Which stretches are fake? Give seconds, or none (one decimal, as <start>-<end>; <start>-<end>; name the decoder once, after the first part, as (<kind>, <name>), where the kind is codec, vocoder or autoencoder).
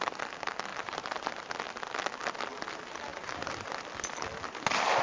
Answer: 0.7-1.5 (vocoder, BigVGAN v2); 3.1-3.7